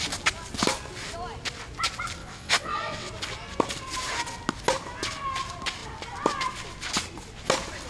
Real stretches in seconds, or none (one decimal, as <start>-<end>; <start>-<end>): 0.0-2.2; 3.1-7.9